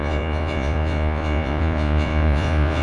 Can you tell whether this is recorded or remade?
remade